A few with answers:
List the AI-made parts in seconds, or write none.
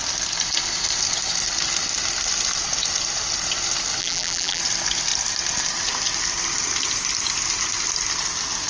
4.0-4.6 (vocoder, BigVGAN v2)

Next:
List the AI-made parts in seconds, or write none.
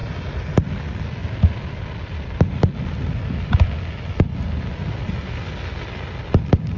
none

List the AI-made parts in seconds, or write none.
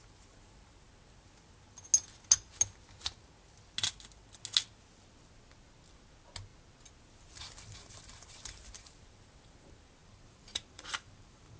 10.0-11.6 (vocoder, BigVGAN v2)